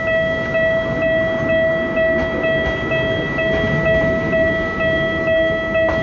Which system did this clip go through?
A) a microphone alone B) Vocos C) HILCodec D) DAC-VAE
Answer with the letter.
A